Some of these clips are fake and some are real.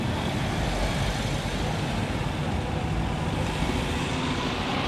real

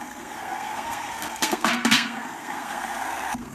fake